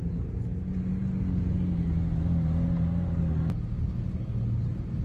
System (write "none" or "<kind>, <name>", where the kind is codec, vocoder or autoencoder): none